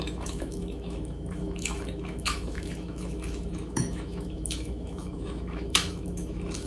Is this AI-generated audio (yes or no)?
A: yes